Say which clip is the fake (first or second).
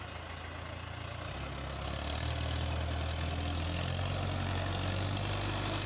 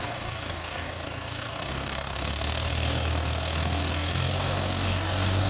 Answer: second